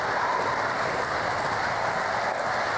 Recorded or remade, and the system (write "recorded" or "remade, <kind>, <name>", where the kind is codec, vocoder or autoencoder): recorded